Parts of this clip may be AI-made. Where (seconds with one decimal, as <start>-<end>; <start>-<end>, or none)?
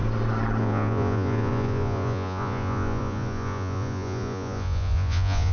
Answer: 0.6-5.5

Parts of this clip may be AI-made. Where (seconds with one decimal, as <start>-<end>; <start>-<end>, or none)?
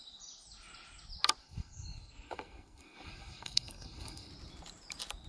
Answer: 1.4-4.3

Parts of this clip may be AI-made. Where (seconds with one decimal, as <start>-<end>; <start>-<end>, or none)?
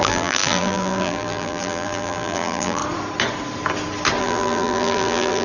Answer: 0.0-2.8; 4.2-5.4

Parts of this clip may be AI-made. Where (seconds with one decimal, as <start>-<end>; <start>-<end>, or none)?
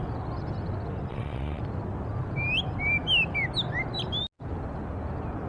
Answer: 1.1-1.6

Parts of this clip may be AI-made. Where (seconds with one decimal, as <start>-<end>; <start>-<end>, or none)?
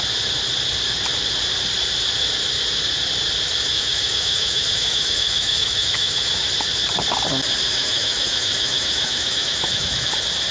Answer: 3.7-6.3; 7.7-10.1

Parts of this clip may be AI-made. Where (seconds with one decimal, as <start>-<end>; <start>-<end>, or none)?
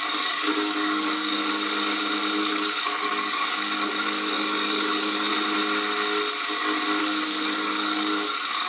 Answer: 0.0-1.4; 2.4-5.3; 7.0-8.7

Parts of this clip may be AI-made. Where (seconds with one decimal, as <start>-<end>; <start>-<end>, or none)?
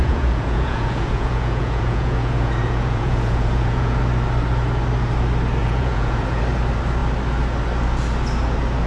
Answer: 0.0-4.0; 5.6-6.4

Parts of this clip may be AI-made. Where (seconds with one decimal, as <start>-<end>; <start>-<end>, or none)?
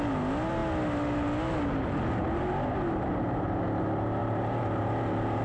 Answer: 4.2-5.4